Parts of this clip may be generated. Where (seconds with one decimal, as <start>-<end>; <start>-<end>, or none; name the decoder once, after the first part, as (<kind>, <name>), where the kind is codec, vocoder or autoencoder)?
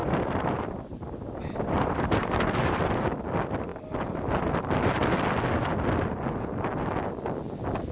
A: 0.0-2.9 (vocoder, BigVGAN v2)